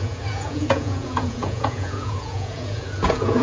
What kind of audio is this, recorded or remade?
remade